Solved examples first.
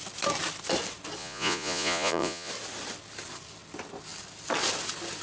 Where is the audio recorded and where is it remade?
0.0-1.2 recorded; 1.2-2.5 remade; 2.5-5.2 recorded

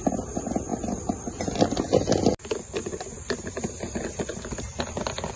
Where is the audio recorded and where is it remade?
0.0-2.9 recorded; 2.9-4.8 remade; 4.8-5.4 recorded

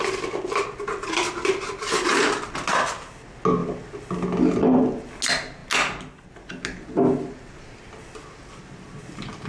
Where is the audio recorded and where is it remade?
0.0-9.5 recorded